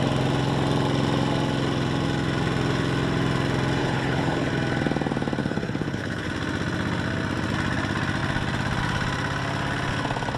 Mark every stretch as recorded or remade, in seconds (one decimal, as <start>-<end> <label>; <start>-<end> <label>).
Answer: 0.0-3.8 recorded; 3.8-4.5 remade; 4.5-5.4 recorded; 5.4-6.3 remade; 6.3-10.4 recorded